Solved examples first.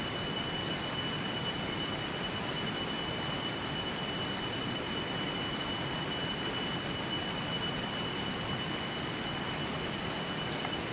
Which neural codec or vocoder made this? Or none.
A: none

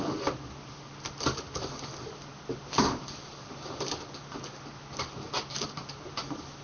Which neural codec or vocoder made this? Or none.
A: none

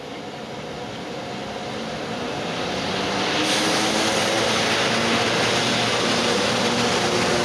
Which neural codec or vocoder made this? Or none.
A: none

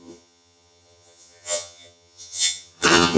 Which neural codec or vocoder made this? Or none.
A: vocoder, HiFi-GAN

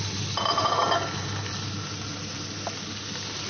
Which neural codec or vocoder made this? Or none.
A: none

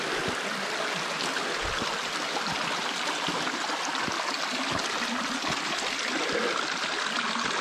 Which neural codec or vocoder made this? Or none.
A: none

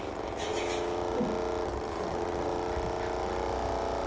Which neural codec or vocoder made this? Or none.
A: none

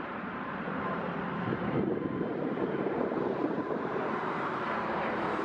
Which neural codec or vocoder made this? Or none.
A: vocoder, BigVGAN v2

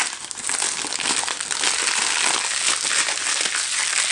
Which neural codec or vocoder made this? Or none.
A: none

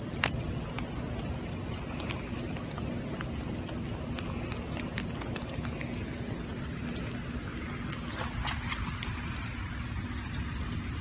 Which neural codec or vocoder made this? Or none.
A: none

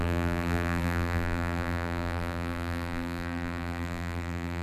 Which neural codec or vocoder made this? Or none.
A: vocoder, BigVGAN v2